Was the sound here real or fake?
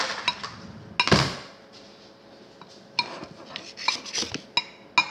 real